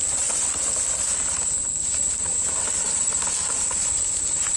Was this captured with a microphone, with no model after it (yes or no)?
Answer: yes